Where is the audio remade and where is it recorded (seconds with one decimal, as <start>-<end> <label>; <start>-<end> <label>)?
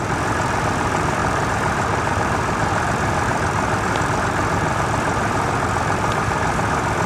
0.0-1.2 recorded; 1.2-4.2 remade; 4.2-7.1 recorded